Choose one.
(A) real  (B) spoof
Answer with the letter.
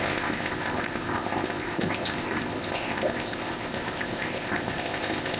B